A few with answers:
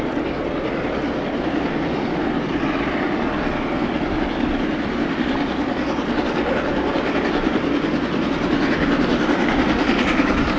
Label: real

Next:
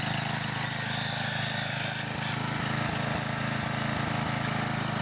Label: real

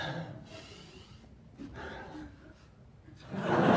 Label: real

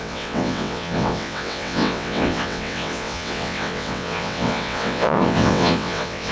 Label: fake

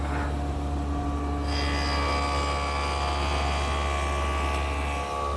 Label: real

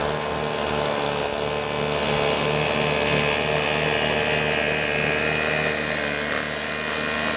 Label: real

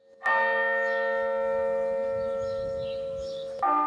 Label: real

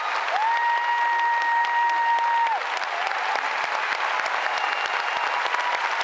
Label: real